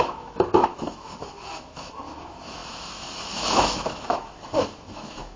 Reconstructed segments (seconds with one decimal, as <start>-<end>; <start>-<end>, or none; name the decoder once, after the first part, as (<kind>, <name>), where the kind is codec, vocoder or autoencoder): 0.0-5.4 (autoencoder, DAC-VAE)

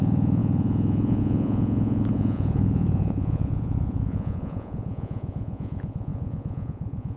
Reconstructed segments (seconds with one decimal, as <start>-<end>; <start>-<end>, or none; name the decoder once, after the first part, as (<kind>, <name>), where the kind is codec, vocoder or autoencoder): 0.0-7.2 (vocoder, Vocos)

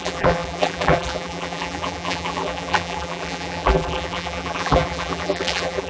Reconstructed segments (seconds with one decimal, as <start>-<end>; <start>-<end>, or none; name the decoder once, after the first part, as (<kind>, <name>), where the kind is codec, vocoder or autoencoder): 0.0-5.9 (vocoder, BigVGAN v2)

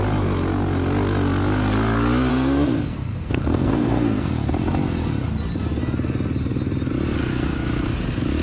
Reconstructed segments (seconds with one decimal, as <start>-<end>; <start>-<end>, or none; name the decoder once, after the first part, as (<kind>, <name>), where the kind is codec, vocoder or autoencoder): 2.3-4.3 (codec, SNAC); 7.2-7.9